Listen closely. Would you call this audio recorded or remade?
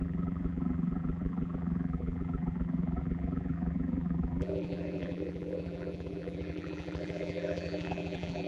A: remade